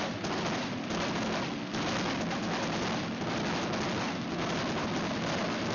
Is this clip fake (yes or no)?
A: no